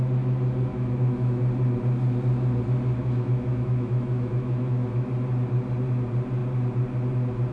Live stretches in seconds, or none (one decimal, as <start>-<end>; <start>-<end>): 0.0-0.7; 1.4-3.0; 5.1-7.5